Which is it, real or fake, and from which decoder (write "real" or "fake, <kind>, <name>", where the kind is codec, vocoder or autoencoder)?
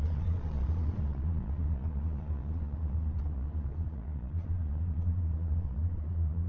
fake, vocoder, Vocos